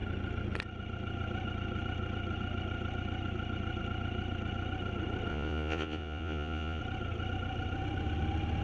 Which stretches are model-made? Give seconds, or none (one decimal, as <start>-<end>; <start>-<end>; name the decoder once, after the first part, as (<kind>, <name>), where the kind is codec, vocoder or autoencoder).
5.3-6.8 (vocoder, Vocos)